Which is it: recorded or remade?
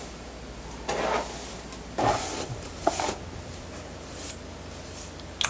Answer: recorded